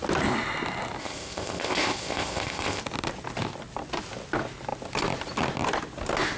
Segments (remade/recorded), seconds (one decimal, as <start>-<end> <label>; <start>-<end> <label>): 0.0-1.0 recorded; 1.0-2.8 remade; 2.8-6.4 recorded